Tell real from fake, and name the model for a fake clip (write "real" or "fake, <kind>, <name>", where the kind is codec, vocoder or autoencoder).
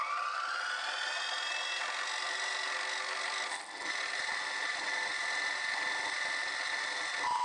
real